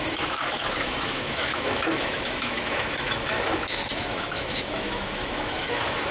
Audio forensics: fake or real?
fake